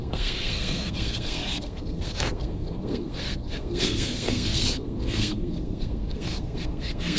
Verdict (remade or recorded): remade